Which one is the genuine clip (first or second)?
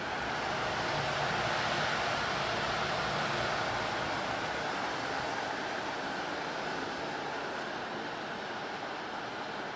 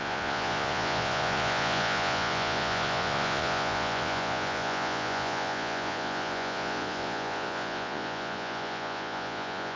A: first